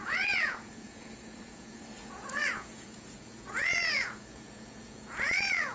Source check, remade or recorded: remade